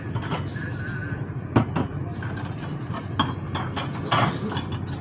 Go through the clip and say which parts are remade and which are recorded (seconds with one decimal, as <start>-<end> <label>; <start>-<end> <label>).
0.0-5.0 recorded